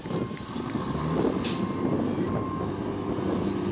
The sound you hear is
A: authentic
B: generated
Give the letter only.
A